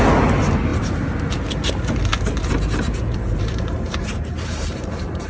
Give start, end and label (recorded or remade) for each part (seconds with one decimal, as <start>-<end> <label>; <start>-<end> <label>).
0.0-2.1 recorded; 2.1-5.3 remade